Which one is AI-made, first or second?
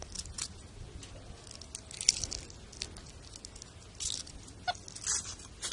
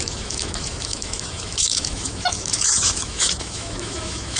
second